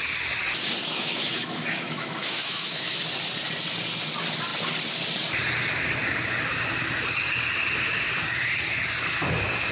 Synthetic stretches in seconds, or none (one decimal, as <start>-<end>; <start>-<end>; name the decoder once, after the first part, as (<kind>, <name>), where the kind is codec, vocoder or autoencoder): 0.9-3.0 (autoencoder, DAC-VAE)